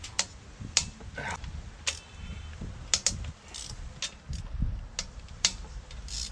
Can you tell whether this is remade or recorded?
recorded